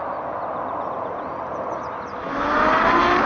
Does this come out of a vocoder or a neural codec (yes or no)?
no